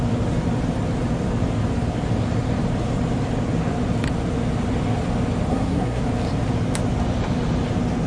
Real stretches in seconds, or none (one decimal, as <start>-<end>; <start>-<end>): 0.0-5.5; 6.0-8.1